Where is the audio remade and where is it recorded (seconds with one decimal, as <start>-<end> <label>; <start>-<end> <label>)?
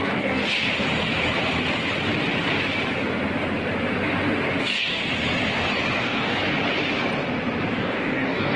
0.0-0.4 remade; 0.4-4.6 recorded; 4.6-5.0 remade; 5.0-6.0 recorded; 6.0-6.4 remade; 6.4-7.7 recorded; 7.7-8.6 remade